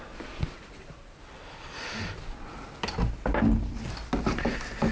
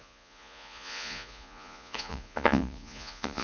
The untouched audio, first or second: first